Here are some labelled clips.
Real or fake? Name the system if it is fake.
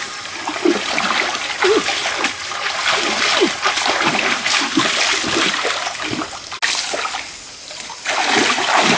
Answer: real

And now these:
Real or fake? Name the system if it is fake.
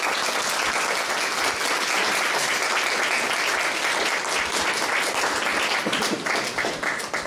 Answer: real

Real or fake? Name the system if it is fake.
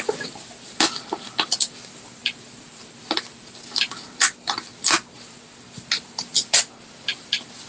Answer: real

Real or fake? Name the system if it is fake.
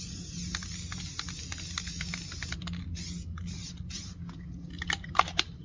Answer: real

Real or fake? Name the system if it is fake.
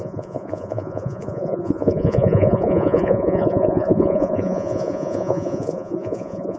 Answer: fake, vocoder, Vocos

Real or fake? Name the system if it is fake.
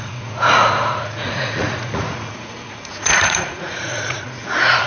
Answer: fake, vocoder, Vocos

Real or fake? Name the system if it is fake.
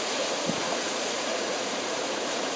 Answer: fake, vocoder, Vocos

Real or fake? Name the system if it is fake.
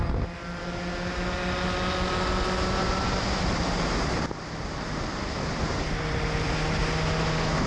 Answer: real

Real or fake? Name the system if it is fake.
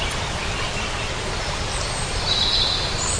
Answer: real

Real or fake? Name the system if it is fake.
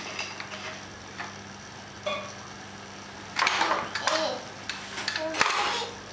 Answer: real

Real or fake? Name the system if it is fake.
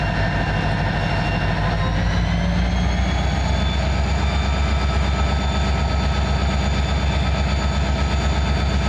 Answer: real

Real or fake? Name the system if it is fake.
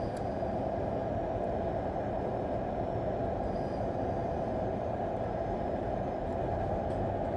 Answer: real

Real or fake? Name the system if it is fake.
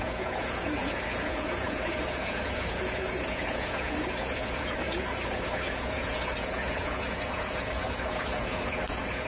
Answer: fake, vocoder, Vocos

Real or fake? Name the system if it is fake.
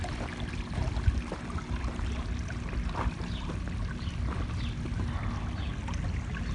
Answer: real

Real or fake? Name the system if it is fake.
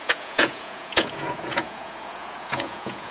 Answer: fake, vocoder, Vocos